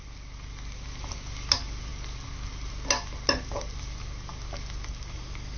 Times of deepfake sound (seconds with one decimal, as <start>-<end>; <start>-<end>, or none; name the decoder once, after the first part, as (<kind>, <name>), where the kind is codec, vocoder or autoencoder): none